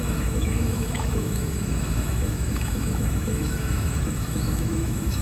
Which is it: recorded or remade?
remade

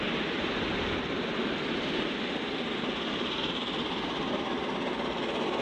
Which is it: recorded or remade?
recorded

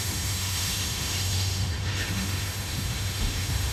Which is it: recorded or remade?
remade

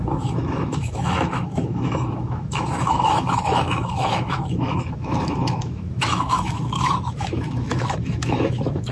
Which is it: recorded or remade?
remade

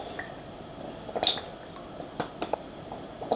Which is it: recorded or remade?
recorded